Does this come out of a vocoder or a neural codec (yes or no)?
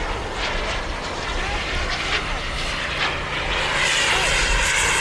no